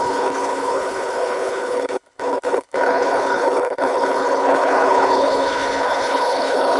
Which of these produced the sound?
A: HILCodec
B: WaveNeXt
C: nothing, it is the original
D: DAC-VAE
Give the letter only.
A